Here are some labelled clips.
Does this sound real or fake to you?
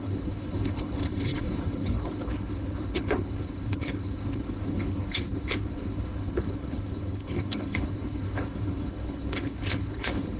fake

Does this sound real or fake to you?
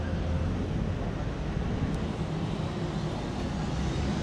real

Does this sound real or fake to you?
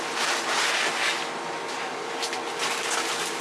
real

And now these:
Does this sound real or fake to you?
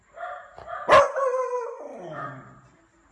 real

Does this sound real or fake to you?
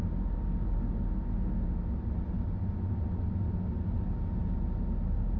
real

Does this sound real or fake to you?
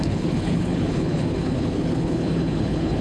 fake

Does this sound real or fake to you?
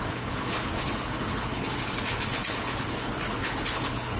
fake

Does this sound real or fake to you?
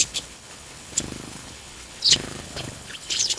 fake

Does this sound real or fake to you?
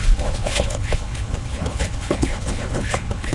fake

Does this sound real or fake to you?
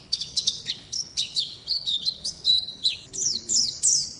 fake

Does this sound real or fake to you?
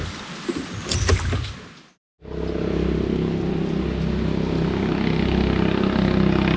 real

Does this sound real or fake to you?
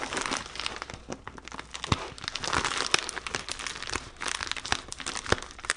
real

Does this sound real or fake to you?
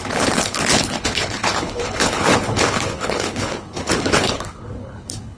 fake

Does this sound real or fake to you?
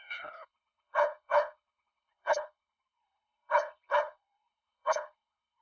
fake